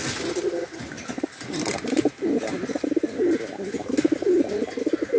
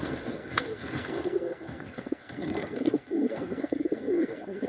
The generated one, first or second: second